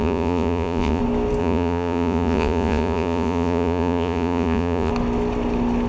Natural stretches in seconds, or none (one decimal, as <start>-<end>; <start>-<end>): 1.0-1.4; 4.9-5.9